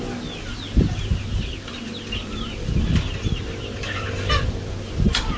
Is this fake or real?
real